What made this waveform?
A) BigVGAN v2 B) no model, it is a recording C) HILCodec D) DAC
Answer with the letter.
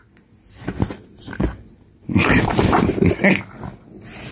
B